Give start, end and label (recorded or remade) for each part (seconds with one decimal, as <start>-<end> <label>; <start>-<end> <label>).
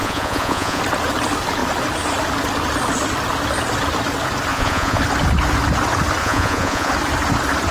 0.0-0.8 remade; 0.8-4.5 recorded; 4.5-5.0 remade; 5.0-6.2 recorded; 6.2-6.9 remade; 6.9-7.7 recorded